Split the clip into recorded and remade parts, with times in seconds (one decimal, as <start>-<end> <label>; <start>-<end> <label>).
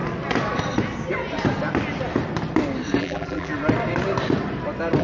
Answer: 0.0-3.0 recorded; 3.0-3.5 remade; 3.5-5.0 recorded